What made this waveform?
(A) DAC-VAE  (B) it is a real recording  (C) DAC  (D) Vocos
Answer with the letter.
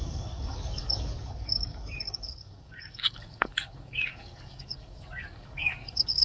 C